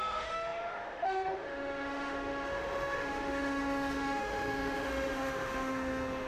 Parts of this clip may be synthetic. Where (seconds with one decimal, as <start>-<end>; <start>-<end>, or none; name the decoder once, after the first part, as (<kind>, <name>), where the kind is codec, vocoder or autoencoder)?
0.0-6.3 (autoencoder, DAC-VAE)